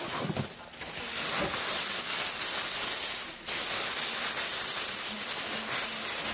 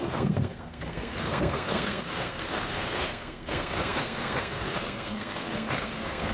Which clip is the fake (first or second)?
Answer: second